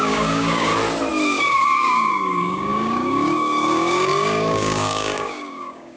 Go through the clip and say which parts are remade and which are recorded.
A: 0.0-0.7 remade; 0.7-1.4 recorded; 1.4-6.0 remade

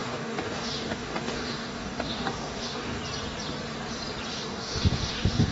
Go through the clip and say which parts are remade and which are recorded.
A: 0.0-3.0 remade; 3.0-4.3 recorded; 4.3-5.5 remade

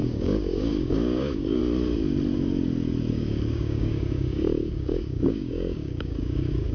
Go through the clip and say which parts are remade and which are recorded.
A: 0.0-1.6 remade; 1.6-3.1 recorded; 3.1-6.7 remade

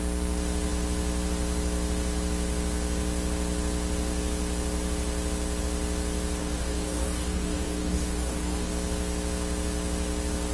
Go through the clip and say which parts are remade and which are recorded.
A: 0.0-6.4 recorded; 6.4-8.7 remade; 8.7-10.5 recorded

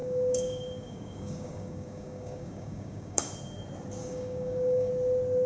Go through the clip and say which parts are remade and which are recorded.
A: 0.0-3.3 remade; 3.3-4.0 recorded; 4.0-4.9 remade; 4.9-5.5 recorded